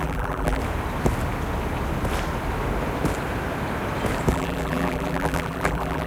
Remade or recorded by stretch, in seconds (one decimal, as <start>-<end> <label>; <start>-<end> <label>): 0.0-0.6 remade; 0.6-4.3 recorded; 4.3-6.1 remade